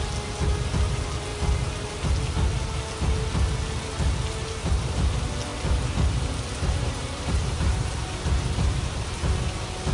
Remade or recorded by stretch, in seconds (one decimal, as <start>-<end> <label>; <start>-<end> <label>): 0.0-1.3 recorded; 1.3-1.9 remade; 1.9-4.4 recorded; 4.4-5.0 remade; 5.0-5.5 recorded; 5.5-9.3 remade; 9.3-9.9 recorded